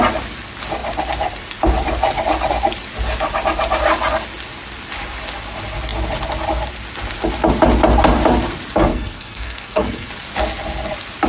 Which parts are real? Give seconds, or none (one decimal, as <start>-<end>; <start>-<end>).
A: 0.0-8.9; 10.1-11.3